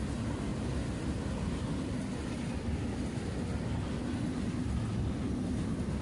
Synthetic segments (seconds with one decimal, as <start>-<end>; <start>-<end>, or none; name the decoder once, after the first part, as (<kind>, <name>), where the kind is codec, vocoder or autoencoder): 0.5-1.0 (vocoder, BigVGAN v2)